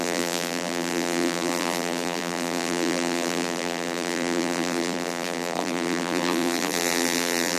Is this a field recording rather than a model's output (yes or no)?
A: no